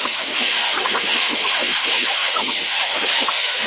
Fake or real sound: fake